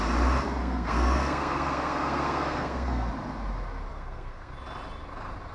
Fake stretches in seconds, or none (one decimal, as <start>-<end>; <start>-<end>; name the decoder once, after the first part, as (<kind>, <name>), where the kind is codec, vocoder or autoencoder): 0.6-3.1 (codec, SNAC); 3.9-4.5